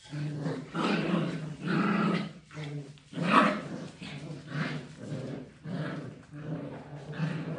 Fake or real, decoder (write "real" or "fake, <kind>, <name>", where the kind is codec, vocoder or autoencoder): real